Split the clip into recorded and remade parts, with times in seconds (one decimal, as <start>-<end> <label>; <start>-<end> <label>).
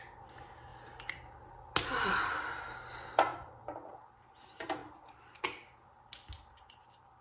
0.0-3.3 recorded; 3.3-3.9 remade; 3.9-4.8 recorded; 4.8-5.3 remade; 5.3-7.2 recorded